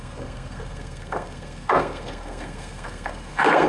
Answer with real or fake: fake